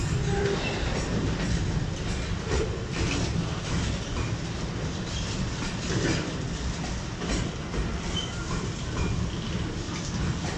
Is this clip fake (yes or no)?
no